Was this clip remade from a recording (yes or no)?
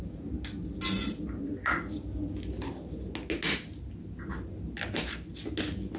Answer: no